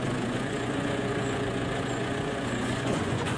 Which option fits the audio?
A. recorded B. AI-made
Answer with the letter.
B